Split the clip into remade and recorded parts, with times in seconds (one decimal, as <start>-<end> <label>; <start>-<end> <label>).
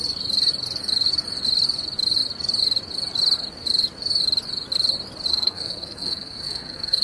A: 0.0-5.3 recorded; 5.3-7.0 remade